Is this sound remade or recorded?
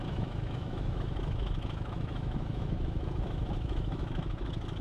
remade